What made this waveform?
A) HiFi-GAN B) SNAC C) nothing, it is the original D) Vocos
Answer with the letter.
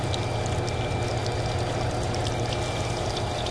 C